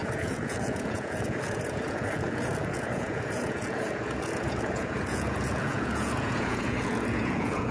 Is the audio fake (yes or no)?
yes